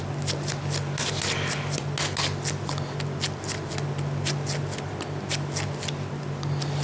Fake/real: real